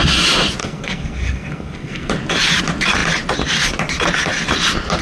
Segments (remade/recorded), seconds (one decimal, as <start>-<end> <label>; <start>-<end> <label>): 0.0-0.6 recorded; 0.6-2.1 remade; 2.1-5.0 recorded